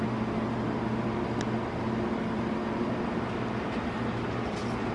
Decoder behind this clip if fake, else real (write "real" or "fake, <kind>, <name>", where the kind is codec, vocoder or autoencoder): real